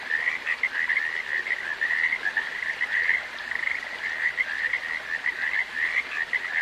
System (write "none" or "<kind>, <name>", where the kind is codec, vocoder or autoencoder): none